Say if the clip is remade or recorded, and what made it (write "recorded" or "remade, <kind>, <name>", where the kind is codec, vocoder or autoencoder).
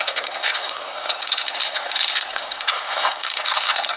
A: remade, codec, SNAC